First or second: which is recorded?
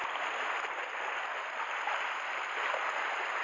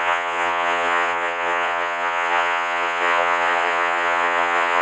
first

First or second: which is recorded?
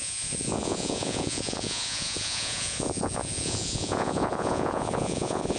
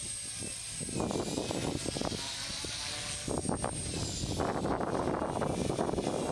second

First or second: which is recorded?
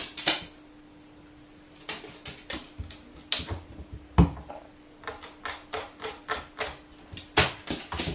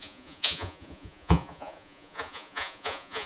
first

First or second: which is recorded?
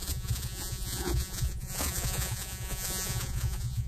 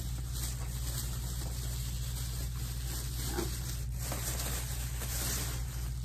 second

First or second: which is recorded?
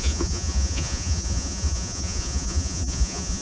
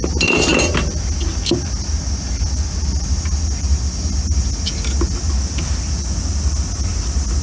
second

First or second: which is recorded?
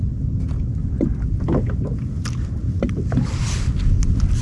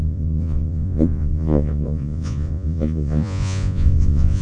first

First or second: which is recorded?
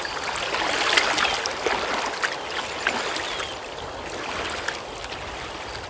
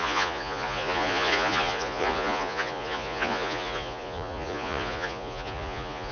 first